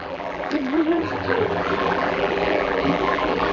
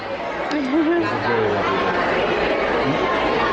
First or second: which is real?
second